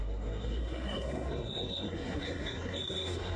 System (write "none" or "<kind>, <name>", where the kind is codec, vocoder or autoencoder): codec, SNAC